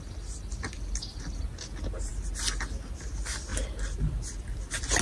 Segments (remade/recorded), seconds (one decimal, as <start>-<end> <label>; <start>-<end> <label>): 0.0-5.0 recorded